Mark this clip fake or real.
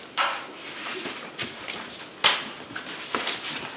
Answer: real